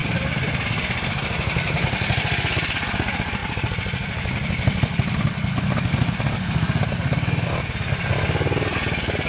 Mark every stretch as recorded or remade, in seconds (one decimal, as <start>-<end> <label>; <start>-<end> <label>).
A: 0.0-9.3 recorded